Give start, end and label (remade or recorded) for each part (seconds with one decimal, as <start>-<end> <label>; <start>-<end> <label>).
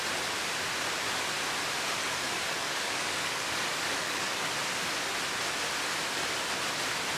0.0-2.0 recorded; 2.0-4.5 remade; 4.5-7.2 recorded